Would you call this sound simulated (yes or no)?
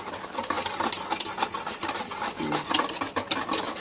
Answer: no